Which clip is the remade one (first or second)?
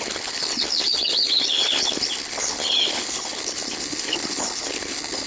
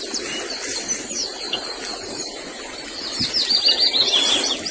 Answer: first